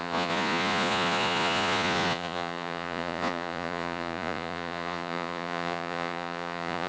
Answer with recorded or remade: remade